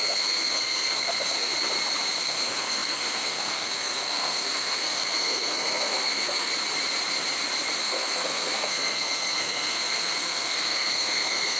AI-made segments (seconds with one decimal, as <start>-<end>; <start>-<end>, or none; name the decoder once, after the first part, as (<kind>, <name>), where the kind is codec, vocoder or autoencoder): 0.0-1.5 (codec, SNAC); 2.2-6.5; 7.8-11.6